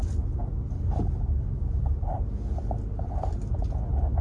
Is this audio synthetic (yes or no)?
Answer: no